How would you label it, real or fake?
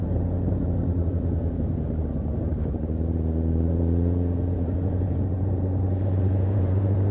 fake